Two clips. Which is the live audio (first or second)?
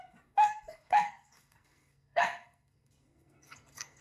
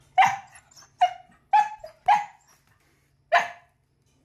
second